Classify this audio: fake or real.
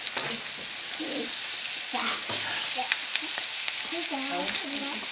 real